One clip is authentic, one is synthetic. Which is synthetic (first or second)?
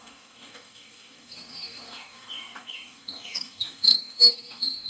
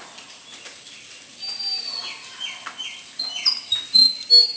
first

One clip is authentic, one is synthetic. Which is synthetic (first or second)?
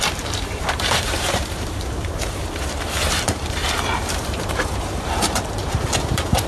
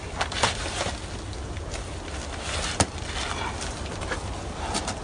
first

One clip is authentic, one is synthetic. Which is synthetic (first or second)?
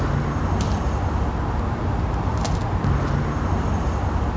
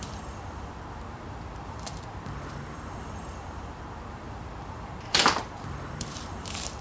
second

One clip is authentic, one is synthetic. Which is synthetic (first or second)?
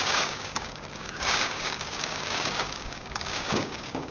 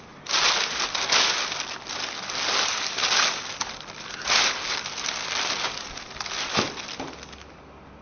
first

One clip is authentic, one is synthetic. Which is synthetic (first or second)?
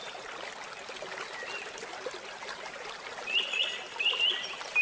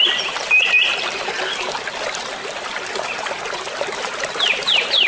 second